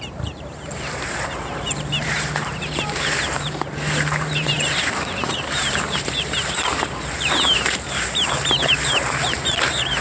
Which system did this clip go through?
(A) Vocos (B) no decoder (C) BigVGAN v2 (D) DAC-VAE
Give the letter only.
C